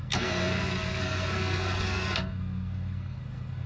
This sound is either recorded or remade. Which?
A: remade